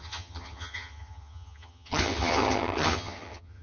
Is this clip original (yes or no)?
no